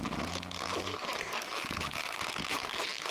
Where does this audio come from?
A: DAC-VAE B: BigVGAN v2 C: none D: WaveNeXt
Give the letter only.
A